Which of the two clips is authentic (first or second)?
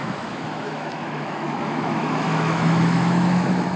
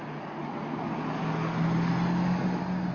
second